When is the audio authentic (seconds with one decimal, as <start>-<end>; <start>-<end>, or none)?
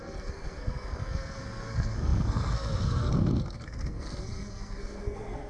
none